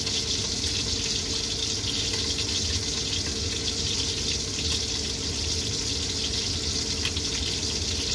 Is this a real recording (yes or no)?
yes